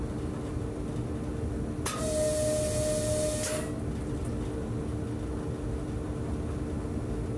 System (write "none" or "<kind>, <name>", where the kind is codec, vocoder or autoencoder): none